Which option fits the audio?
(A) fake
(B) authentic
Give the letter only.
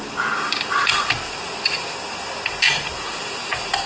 B